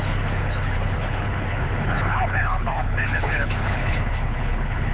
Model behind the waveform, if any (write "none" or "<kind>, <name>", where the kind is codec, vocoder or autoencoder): codec, HILCodec